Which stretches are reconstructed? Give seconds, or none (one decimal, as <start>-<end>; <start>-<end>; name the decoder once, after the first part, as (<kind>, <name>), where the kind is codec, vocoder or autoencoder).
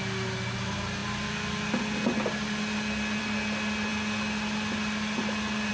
none